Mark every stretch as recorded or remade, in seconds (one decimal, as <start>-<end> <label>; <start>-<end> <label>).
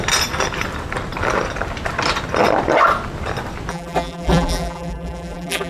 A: 0.0-3.7 recorded; 3.7-5.7 remade